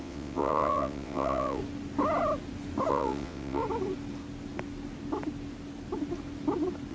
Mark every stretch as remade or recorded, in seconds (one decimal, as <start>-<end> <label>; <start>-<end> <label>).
0.0-1.6 remade; 1.6-2.9 recorded; 2.9-3.6 remade; 3.6-6.9 recorded